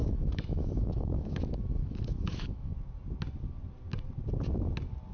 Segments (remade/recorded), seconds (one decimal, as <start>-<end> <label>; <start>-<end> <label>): 0.0-2.7 remade; 2.7-5.1 recorded